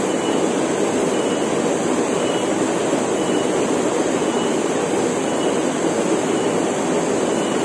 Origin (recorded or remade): recorded